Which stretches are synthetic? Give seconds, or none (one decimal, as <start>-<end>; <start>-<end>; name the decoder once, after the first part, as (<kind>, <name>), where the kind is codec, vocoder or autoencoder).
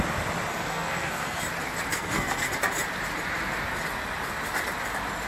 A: 0.5-1.4 (codec, SNAC); 1.9-2.5